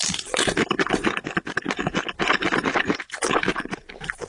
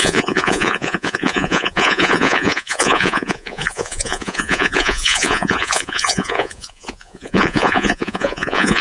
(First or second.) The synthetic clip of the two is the second